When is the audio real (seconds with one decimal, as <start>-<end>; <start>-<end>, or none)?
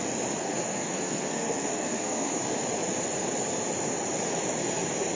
0.0-0.4; 2.4-5.1